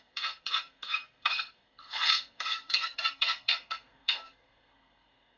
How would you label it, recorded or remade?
remade